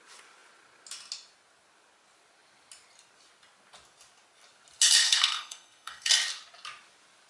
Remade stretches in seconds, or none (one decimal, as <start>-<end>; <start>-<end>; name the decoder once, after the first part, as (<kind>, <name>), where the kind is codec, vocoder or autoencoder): 5.0-6.1 (codec, SNAC)